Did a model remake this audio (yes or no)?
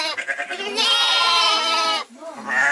no